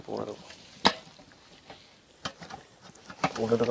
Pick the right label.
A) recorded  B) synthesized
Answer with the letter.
A